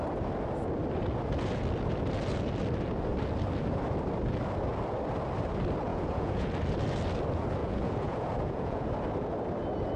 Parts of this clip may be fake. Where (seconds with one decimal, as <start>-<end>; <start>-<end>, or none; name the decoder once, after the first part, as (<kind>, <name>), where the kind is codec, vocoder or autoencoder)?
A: 5.9-6.5 (vocoder, Vocos); 7.6-8.8